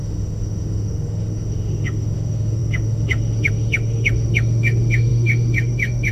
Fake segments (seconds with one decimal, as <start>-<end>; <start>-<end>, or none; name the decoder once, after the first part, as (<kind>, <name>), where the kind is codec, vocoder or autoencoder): 0.0-6.1 (autoencoder, DAC-VAE)